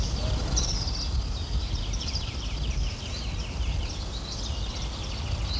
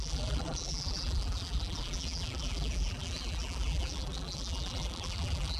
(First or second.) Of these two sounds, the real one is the first